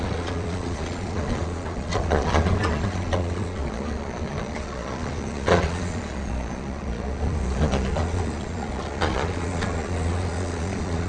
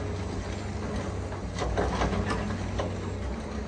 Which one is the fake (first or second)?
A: first